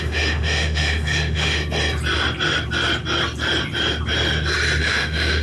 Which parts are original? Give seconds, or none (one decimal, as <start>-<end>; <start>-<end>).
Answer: 1.6-4.8